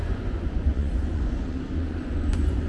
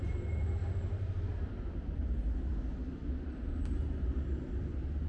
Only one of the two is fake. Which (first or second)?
first